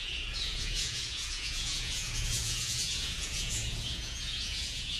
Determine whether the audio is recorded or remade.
remade